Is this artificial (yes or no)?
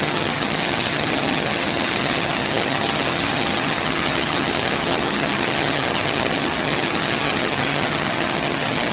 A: yes